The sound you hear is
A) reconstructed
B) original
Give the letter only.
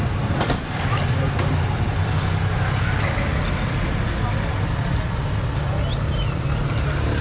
B